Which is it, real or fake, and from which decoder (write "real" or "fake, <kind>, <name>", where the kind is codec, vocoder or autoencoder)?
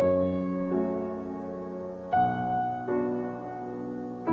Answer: real